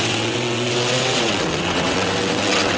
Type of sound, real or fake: fake